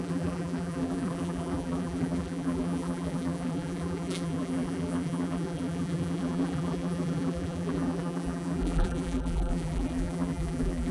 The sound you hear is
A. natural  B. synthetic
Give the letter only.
B